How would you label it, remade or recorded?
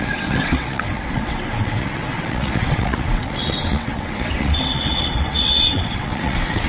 remade